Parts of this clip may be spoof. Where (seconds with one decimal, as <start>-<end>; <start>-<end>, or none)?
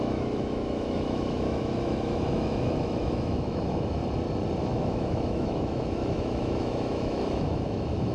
0.0-4.0; 4.6-8.1